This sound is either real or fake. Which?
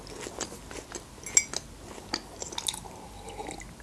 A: real